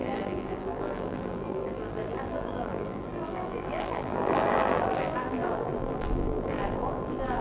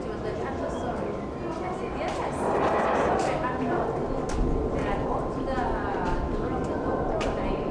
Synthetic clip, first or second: first